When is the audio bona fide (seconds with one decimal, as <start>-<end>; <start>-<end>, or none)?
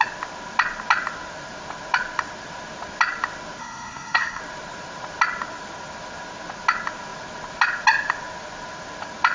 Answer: 0.0-3.6; 4.4-9.3